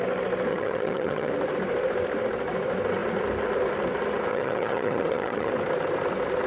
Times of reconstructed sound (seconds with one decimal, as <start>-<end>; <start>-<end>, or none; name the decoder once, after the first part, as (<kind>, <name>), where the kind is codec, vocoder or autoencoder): 0.5-1.3 (vocoder, HiFi-GAN); 4.3-5.5